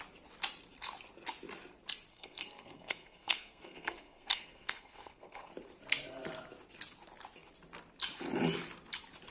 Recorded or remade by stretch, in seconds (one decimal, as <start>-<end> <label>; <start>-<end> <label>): 0.0-2.1 recorded; 2.1-5.5 remade; 5.5-9.3 recorded